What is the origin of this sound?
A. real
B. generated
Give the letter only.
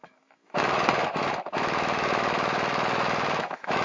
B